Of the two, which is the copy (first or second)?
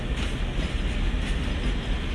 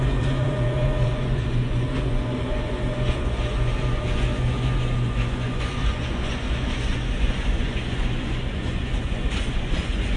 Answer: second